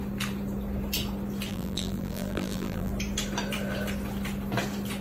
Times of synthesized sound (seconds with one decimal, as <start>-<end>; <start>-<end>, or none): 1.5-2.9